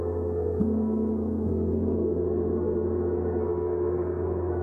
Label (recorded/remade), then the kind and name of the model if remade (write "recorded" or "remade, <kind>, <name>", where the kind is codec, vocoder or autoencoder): remade, codec, SNAC